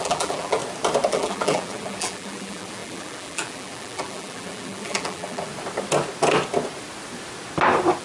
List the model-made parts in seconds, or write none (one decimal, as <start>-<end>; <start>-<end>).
0.0-0.6; 1.1-5.5